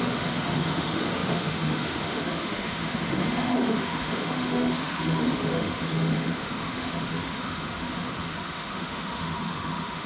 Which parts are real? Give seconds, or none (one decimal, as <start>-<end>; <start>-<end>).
none